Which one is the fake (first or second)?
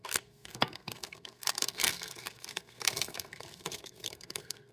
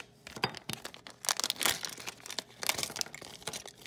first